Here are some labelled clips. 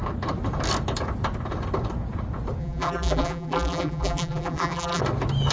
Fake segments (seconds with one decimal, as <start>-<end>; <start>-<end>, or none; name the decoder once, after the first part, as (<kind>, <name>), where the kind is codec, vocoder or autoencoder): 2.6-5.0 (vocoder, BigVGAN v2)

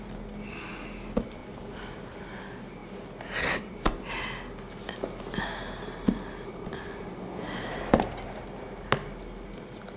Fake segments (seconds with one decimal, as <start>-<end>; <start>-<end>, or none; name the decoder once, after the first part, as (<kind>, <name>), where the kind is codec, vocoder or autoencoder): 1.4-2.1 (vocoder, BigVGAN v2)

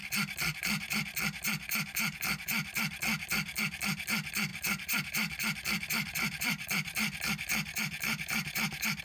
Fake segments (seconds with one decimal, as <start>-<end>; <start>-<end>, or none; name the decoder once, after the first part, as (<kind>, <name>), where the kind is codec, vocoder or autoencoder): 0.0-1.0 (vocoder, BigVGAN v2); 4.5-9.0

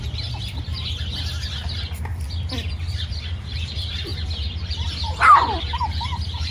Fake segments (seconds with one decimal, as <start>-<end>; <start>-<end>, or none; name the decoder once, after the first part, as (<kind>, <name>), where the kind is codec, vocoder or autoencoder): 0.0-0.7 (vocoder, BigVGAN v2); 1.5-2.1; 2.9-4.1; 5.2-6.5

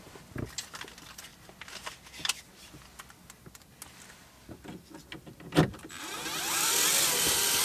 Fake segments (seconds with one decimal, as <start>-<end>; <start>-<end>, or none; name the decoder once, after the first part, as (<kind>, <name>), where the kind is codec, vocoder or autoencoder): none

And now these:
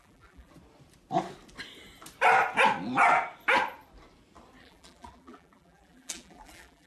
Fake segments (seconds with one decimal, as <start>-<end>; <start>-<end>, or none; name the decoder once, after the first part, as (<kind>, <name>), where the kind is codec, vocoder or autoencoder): 0.0-0.5 (vocoder, BigVGAN v2); 4.6-6.9

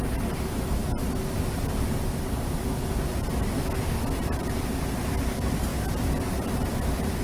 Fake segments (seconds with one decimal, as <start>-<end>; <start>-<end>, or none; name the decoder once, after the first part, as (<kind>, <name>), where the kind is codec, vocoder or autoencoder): 4.2-4.8 (vocoder, BigVGAN v2)